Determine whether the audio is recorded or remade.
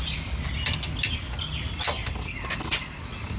recorded